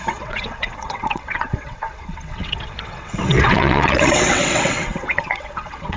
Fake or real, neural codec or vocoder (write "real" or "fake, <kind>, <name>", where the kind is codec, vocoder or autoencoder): fake, vocoder, WaveNeXt